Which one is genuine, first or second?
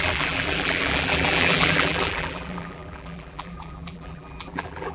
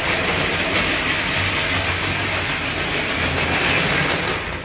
second